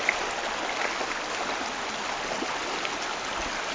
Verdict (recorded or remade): recorded